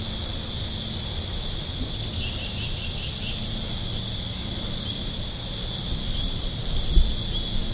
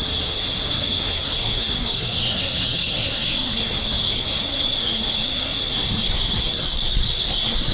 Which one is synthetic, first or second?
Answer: second